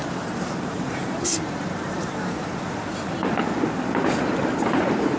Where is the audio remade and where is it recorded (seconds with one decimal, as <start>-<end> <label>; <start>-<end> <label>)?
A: 0.0-3.1 remade; 3.1-5.2 recorded